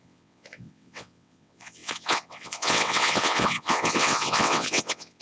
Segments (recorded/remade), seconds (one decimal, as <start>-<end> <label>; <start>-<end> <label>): 0.0-5.2 remade